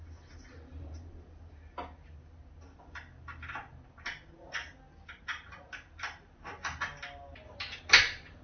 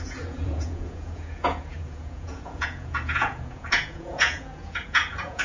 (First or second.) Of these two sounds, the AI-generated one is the second